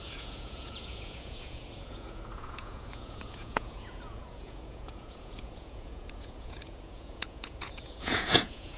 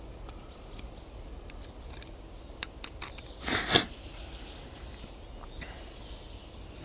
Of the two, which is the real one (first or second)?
second